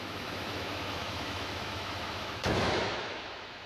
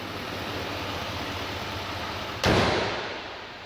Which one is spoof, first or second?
first